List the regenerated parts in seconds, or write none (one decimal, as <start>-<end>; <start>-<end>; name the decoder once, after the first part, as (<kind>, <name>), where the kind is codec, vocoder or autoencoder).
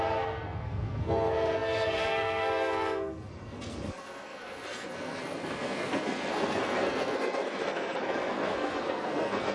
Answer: 0.0-9.5 (codec, SNAC)